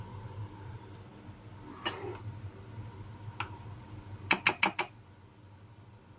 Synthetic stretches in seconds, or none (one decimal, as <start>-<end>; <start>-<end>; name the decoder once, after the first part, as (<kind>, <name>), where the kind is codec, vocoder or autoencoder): none